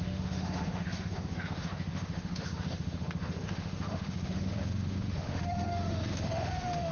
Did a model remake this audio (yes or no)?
yes